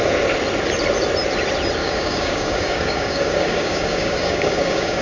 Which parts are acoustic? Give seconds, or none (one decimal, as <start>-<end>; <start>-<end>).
0.0-1.8